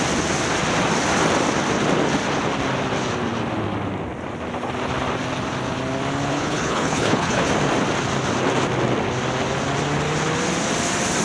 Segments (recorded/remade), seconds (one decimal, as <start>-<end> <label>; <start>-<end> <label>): 0.0-6.3 recorded; 6.3-7.5 remade; 7.5-11.2 recorded